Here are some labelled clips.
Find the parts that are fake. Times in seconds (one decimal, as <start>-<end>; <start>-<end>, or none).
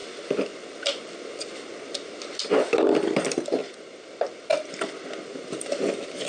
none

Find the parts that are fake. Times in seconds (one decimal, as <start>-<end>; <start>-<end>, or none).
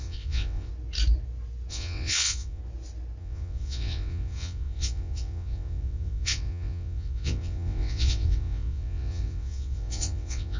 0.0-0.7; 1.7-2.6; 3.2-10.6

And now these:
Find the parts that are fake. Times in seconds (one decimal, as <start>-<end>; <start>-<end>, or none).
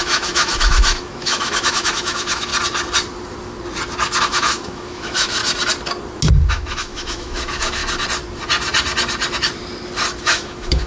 0.0-2.5; 4.2-5.4; 6.5-7.8; 10.2-10.9